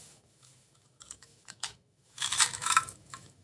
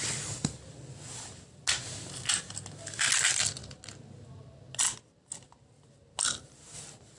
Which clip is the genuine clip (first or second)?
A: second